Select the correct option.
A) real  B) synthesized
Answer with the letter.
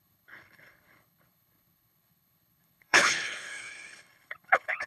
B